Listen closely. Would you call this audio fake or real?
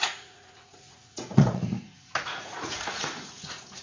fake